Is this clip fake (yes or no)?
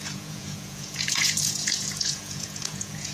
yes